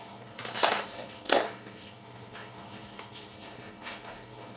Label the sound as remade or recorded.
remade